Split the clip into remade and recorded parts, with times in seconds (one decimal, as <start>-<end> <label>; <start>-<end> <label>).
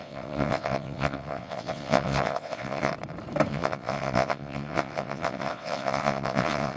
0.0-2.9 remade; 2.9-3.5 recorded; 3.5-6.8 remade